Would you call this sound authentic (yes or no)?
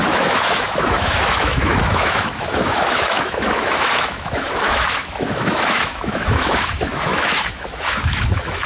no